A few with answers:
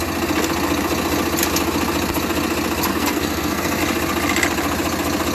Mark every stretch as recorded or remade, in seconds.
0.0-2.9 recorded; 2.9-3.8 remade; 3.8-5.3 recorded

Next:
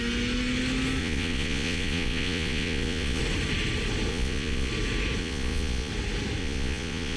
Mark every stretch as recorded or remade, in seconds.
0.0-1.0 recorded; 1.0-3.2 remade; 3.2-4.1 recorded; 4.1-4.7 remade; 4.7-5.2 recorded; 5.2-5.9 remade; 5.9-6.4 recorded; 6.4-7.2 remade

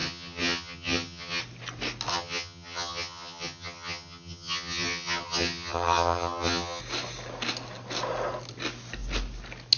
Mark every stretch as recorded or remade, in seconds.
0.0-1.4 remade; 1.4-2.1 recorded; 2.1-6.8 remade; 6.8-9.8 recorded

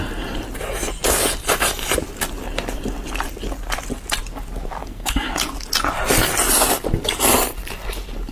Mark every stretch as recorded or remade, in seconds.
0.0-4.8 recorded; 4.8-5.3 remade; 5.3-8.3 recorded

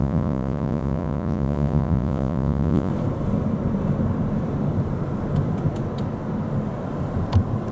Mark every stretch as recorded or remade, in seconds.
0.0-2.9 remade; 2.9-7.7 recorded